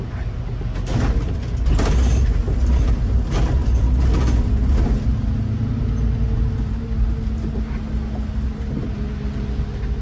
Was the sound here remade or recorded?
recorded